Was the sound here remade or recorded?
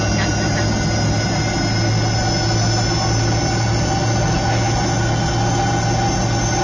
recorded